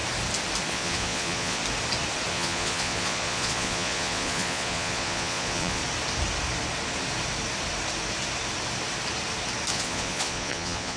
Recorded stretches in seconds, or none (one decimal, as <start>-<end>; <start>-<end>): 0.0-0.7; 1.6-2.3; 5.8-9.7